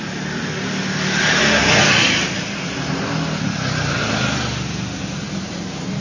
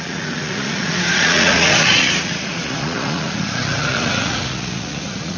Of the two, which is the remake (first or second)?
second